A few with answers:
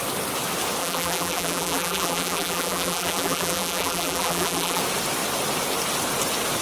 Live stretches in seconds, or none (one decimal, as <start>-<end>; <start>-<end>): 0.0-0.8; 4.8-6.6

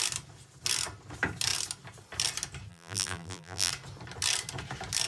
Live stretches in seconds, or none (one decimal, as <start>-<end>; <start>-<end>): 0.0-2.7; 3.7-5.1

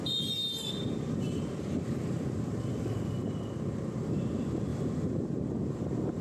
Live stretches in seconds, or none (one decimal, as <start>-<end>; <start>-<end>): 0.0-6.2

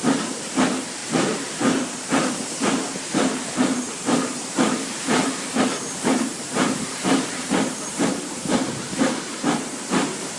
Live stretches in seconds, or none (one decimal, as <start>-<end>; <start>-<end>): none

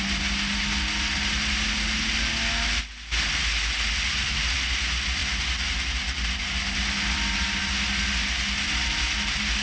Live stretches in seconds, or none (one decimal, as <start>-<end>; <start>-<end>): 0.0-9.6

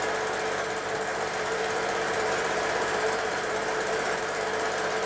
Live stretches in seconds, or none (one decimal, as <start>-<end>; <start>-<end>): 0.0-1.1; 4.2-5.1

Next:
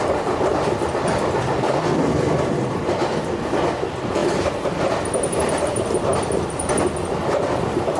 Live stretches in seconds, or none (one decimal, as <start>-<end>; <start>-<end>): 0.5-1.2; 3.0-3.7; 4.2-5.4